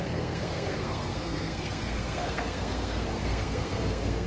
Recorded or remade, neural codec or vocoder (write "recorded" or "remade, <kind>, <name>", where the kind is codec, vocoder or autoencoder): remade, codec, SNAC